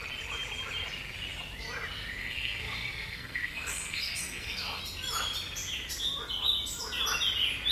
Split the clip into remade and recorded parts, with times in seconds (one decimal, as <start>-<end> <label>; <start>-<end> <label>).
0.0-2.2 recorded; 2.2-4.8 remade; 4.8-7.7 recorded